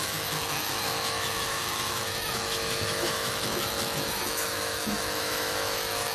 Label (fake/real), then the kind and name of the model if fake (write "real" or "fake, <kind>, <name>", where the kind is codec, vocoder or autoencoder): fake, autoencoder, DAC-VAE